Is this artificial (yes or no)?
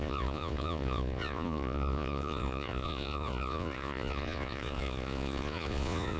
yes